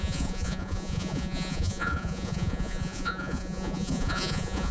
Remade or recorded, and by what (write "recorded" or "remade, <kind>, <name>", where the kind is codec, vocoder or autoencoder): remade, vocoder, Vocos